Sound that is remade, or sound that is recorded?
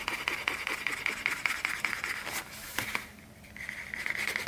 recorded